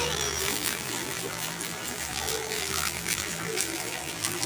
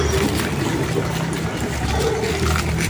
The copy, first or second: first